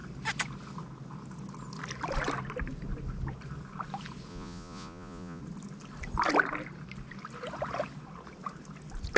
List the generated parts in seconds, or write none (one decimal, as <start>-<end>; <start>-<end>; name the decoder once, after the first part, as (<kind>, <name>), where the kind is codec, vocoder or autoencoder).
4.3-5.4 (vocoder, Vocos)